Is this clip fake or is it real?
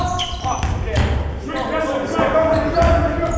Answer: real